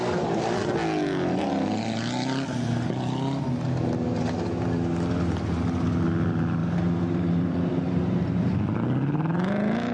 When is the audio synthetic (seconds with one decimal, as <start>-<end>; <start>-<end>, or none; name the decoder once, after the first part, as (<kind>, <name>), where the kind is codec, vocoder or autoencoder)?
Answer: 6.6-8.2 (vocoder, BigVGAN v2)